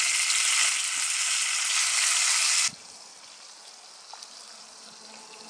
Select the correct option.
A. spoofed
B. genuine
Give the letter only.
B